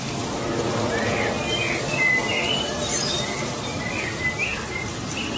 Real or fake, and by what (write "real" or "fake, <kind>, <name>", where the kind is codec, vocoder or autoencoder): real